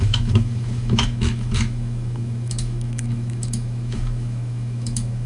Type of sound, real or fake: fake